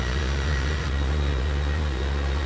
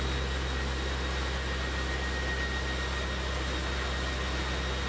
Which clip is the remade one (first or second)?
first